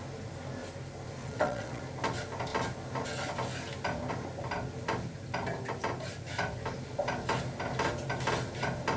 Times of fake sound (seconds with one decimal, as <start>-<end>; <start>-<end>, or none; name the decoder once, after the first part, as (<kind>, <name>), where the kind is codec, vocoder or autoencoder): 1.2-1.8 (vocoder, WaveNeXt)